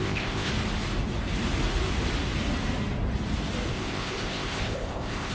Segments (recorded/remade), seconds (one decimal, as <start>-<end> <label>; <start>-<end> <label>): 0.0-0.5 remade; 0.5-3.7 recorded; 3.7-5.3 remade